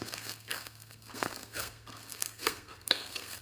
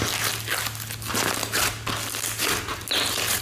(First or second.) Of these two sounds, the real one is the second